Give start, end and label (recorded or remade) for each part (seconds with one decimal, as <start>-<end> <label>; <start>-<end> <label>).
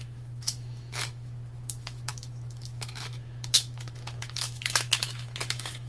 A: 0.0-5.9 remade